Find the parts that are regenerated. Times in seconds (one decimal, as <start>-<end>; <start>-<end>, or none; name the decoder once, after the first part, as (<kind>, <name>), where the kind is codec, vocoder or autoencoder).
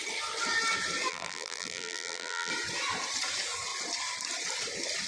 1.1-2.5 (vocoder, BigVGAN v2)